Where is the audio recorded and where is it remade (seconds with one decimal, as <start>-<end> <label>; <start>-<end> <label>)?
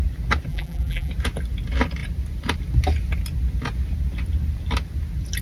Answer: 0.0-0.5 recorded; 0.5-1.1 remade; 1.1-5.4 recorded